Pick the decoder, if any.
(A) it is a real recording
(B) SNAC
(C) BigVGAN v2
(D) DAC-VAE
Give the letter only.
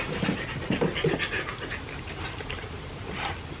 A